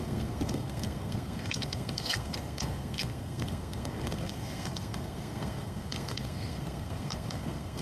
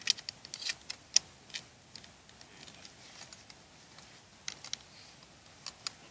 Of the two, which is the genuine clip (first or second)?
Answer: second